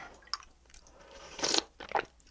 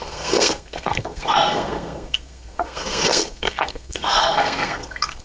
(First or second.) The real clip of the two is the first